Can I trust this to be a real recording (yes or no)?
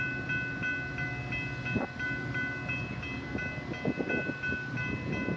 yes